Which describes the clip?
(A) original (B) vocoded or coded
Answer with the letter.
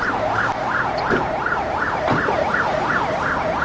A